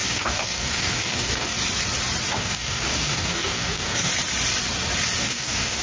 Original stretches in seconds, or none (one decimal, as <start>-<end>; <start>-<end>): 1.5-2.3; 4.1-5.2